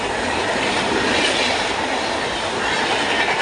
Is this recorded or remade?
recorded